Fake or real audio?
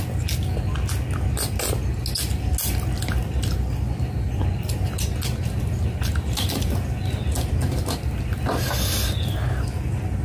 real